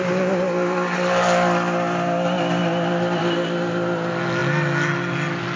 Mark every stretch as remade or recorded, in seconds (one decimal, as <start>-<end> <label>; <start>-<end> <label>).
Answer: 0.0-5.6 recorded